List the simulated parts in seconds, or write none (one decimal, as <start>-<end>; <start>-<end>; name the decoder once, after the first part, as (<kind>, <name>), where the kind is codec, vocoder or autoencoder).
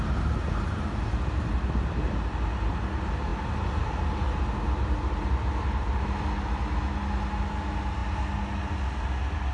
none